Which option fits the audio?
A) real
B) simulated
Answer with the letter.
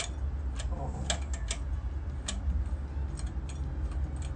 A